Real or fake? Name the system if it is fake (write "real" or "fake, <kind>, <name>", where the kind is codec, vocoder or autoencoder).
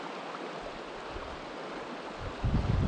real